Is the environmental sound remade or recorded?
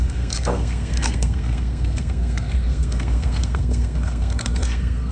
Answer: remade